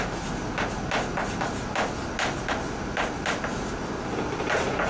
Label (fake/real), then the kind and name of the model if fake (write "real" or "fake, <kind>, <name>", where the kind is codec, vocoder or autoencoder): real